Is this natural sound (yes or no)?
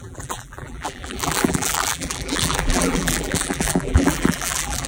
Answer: no